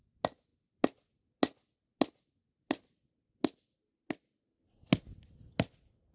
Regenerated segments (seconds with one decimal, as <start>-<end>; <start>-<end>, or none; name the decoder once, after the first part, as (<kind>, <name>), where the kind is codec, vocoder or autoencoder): none

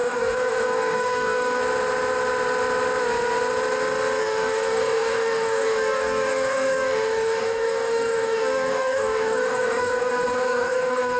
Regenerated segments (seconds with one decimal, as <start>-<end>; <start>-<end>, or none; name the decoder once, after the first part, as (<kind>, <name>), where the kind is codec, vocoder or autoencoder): 0.0-1.6 (codec, DAC); 4.2-11.2

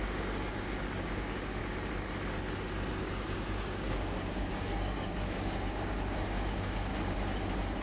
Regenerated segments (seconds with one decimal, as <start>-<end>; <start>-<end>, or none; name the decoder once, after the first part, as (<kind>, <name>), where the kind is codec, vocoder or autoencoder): 0.0-1.6 (codec, DAC); 3.0-6.9

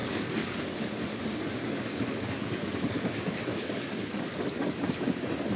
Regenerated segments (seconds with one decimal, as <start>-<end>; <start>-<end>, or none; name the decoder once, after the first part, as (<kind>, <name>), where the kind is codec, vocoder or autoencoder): 0.0-0.9 (codec, DAC); 1.6-5.0

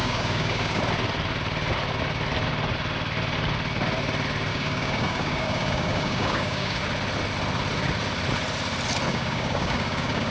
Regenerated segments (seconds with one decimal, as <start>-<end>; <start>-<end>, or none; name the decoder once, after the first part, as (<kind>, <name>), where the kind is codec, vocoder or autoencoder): 0.0-0.8 (codec, DAC); 4.5-6.8; 9.1-10.3

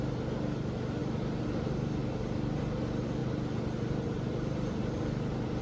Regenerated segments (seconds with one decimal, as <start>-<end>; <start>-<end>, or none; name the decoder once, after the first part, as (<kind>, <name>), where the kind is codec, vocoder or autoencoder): none

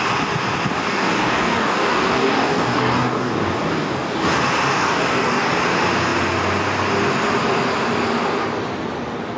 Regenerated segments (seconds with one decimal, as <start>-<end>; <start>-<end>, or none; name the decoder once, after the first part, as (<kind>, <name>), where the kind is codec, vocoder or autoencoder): 0.8-4.1 (codec, DAC); 4.7-5.5